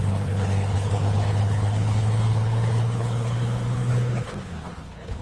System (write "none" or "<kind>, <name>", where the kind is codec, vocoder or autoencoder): codec, HILCodec